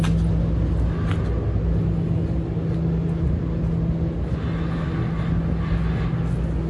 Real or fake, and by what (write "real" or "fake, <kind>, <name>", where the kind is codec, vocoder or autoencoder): real